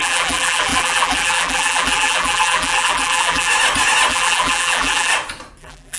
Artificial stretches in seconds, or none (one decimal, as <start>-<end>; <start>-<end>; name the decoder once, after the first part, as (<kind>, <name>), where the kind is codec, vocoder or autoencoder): 0.0-3.5 (vocoder, BigVGAN v2); 4.1-5.1; 5.6-6.0